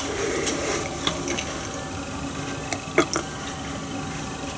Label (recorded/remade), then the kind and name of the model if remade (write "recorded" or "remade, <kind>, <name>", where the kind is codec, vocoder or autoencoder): recorded